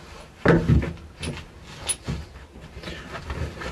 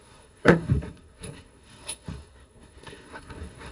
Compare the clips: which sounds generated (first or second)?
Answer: second